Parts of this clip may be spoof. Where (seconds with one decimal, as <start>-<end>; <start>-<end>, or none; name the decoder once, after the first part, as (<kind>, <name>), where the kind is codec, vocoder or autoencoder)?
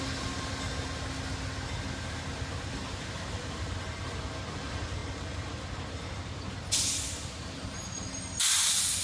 2.8-3.8 (vocoder, BigVGAN v2)